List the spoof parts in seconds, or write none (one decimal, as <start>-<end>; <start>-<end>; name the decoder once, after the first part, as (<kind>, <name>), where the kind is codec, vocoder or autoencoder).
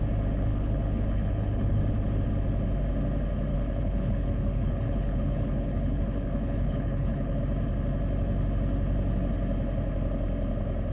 0.5-1.8 (codec, HILCodec); 3.5-7.4